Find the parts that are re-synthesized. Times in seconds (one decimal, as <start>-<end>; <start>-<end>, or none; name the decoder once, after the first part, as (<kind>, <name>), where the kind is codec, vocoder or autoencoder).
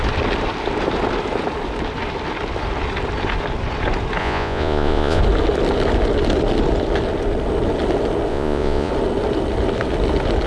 4.2-5.2 (vocoder, Vocos); 8.3-8.9